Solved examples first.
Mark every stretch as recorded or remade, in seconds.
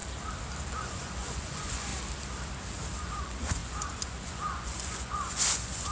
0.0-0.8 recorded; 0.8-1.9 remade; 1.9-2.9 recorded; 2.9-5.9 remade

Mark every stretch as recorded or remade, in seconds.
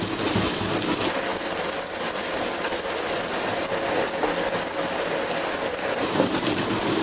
0.0-7.0 recorded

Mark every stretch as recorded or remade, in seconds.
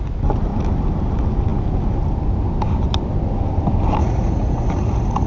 0.0-4.0 recorded; 4.0-5.3 remade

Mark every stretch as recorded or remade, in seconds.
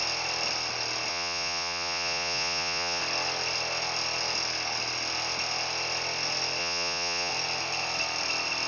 0.0-1.1 recorded; 1.1-3.0 remade; 3.0-6.6 recorded; 6.6-7.3 remade; 7.3-8.7 recorded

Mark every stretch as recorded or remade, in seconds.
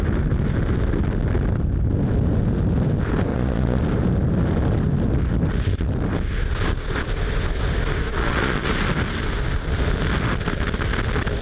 0.0-3.3 recorded; 3.3-3.8 remade; 3.8-8.1 recorded; 8.1-8.7 remade; 8.7-11.4 recorded